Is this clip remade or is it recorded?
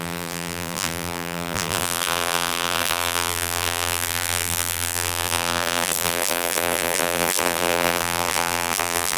remade